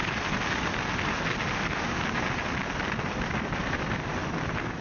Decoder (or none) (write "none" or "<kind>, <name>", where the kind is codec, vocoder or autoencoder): none